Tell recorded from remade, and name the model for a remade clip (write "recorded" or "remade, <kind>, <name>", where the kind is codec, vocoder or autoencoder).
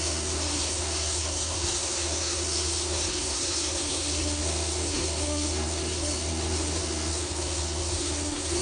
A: remade, codec, SNAC